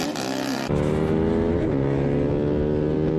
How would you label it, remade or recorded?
recorded